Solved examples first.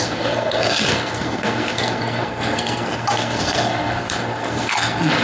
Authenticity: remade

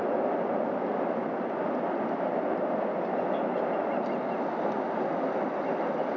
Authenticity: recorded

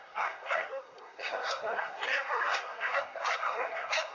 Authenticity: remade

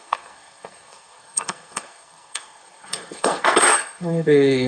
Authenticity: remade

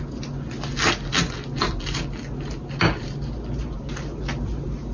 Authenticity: recorded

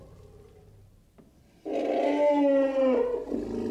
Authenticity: recorded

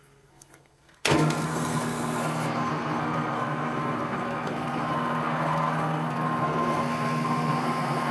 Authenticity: remade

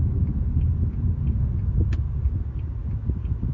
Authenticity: recorded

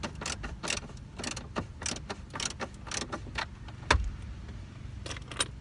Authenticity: recorded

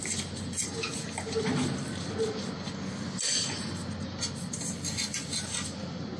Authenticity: recorded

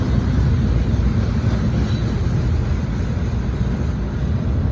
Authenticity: recorded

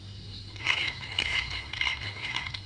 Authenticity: remade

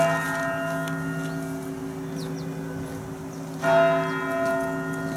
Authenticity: recorded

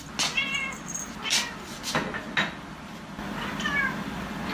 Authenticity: recorded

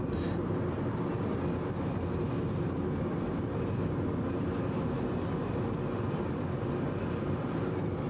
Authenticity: recorded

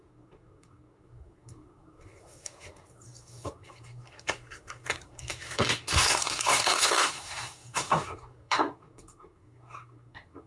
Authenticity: remade